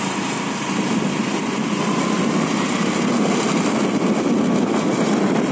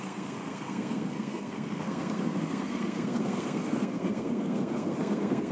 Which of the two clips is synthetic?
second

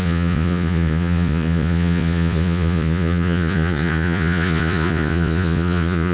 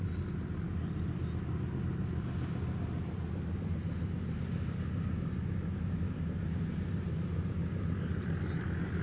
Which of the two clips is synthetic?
first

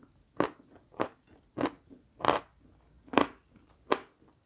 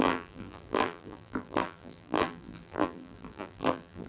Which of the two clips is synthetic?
second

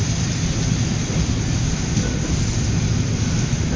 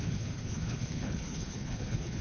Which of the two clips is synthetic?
second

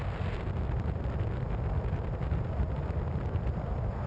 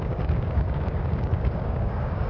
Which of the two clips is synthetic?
second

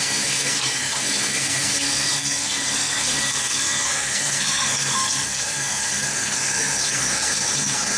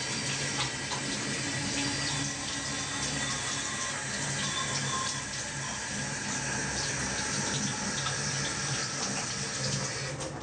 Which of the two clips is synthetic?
first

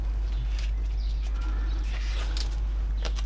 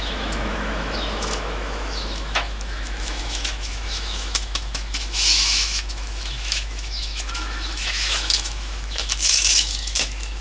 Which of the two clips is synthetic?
second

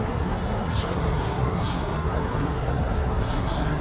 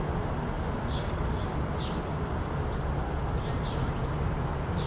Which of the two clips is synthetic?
first